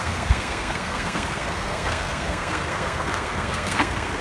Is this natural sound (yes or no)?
no